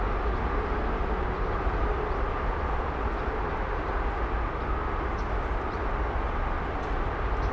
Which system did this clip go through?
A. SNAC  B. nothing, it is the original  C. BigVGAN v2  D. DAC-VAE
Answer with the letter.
B